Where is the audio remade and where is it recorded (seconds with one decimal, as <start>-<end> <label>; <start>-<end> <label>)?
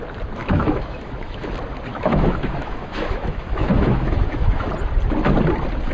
0.0-0.4 recorded; 0.4-1.5 remade; 1.5-1.9 recorded; 1.9-4.7 remade; 4.7-5.9 recorded